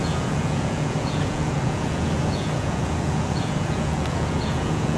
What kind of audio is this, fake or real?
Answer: fake